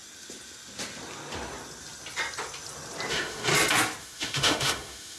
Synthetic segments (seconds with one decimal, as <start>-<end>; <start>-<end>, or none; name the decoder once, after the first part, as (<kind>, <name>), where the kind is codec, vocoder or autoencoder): 3.1-3.5 (autoencoder, DAC-VAE); 4.0-5.2